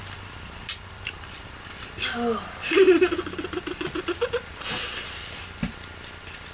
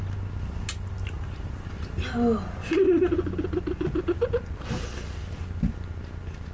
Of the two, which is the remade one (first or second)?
first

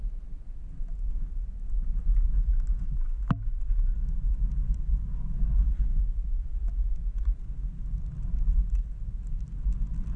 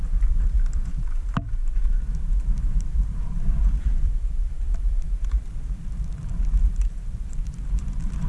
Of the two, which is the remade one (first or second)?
second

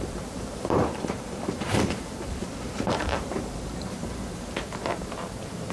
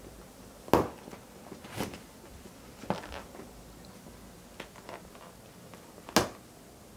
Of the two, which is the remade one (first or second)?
first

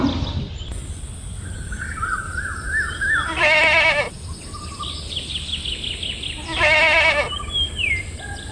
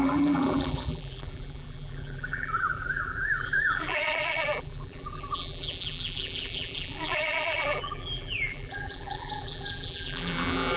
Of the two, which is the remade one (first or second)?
second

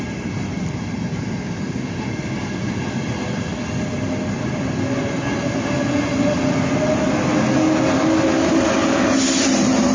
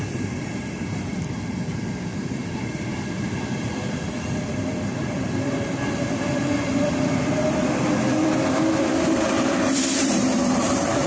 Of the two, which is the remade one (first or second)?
second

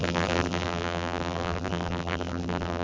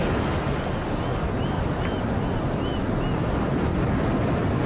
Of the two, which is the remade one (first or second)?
first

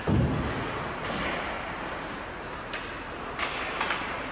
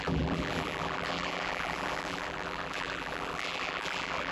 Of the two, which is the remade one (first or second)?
second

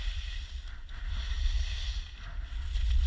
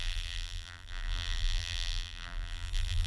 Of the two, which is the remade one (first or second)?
second